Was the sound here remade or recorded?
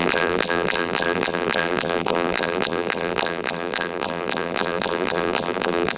remade